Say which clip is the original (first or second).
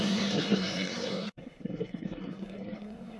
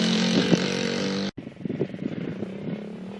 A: second